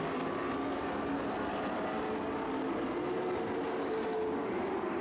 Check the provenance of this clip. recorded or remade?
recorded